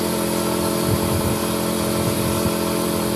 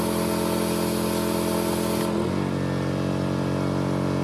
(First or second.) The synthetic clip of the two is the first